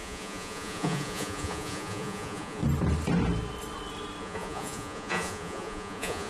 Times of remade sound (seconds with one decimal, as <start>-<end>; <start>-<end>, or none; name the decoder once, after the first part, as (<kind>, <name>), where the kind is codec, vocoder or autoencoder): 0.0-2.6 (vocoder, Vocos); 4.2-6.3